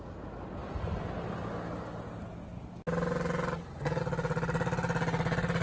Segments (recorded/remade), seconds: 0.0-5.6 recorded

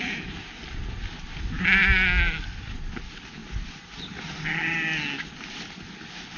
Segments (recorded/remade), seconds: 0.0-6.4 recorded

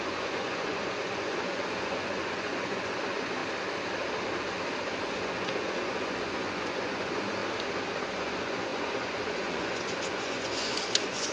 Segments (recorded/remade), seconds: 0.0-3.4 remade; 3.4-5.0 recorded; 5.0-7.4 remade; 7.4-8.1 recorded; 8.1-11.3 remade

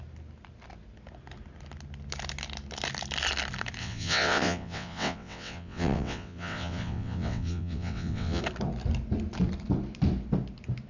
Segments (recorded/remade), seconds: 0.0-3.8 recorded; 3.8-8.4 remade; 8.4-10.9 recorded

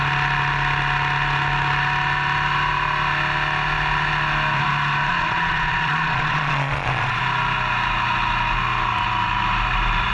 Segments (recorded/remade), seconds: 0.0-5.1 recorded; 5.1-7.2 remade; 7.2-10.1 recorded